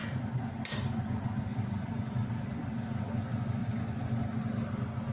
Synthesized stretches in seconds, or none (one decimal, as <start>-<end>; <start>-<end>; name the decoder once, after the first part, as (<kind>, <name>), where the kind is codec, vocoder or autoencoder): 0.0-0.6 (vocoder, BigVGAN v2); 1.5-3.0; 3.6-4.4